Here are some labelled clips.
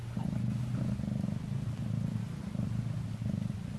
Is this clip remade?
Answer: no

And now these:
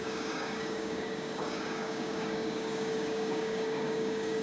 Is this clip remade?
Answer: yes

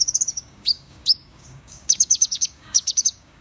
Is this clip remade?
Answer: yes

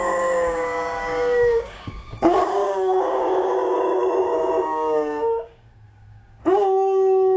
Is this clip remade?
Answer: yes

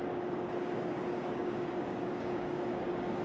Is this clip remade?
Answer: yes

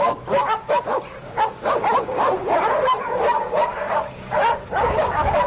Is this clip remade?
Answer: yes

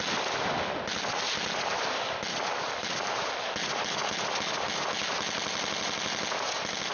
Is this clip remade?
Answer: no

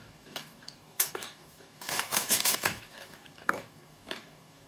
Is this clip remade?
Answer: yes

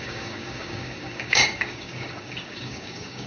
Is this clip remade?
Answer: yes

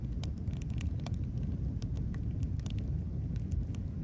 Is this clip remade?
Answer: no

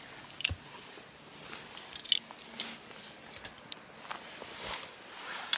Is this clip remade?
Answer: no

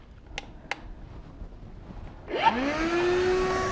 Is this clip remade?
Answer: no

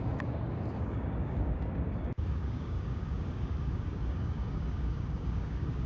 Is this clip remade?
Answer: yes